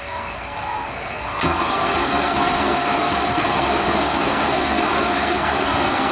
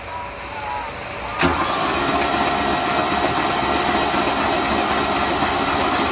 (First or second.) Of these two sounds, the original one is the second